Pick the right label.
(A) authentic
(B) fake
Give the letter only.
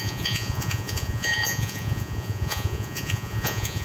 B